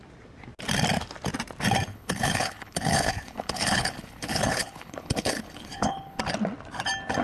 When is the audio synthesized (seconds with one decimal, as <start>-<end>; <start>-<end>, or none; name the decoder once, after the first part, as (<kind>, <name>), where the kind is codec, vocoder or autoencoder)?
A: 1.9-6.2 (codec, HILCodec)